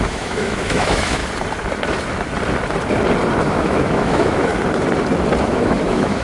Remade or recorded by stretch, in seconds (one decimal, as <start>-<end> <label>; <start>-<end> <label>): 0.0-1.2 remade; 1.2-3.4 recorded; 3.4-4.5 remade; 4.5-5.4 recorded; 5.4-6.2 remade